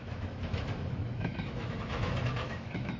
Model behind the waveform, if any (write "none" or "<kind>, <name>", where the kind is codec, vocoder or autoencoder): autoencoder, DAC-VAE